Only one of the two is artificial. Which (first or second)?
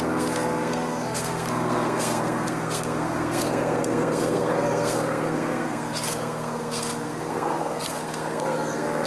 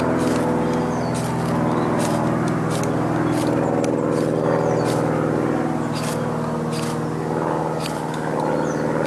first